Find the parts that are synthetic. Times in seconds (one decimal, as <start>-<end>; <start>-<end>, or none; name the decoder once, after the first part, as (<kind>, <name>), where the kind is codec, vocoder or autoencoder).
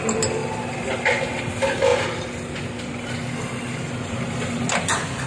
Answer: none